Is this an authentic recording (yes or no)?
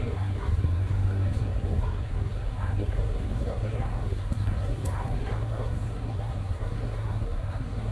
no